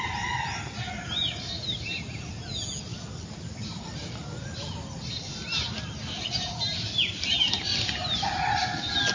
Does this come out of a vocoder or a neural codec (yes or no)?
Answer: no